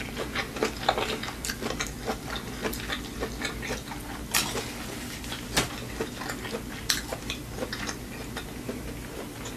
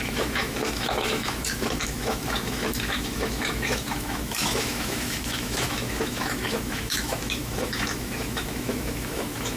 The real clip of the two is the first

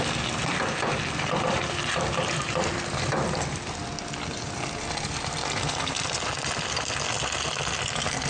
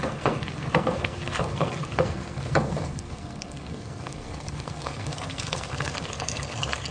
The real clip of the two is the first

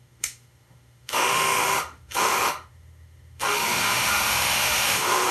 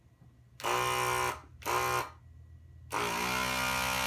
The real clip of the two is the second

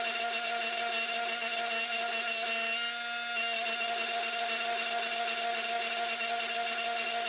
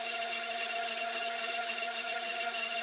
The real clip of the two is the first